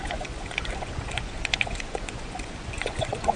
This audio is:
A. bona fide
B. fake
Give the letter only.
B